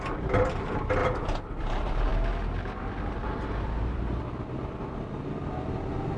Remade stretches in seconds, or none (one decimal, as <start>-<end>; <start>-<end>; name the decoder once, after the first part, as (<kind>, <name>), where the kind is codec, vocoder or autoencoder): 1.0-2.1 (vocoder, BigVGAN v2); 3.2-4.2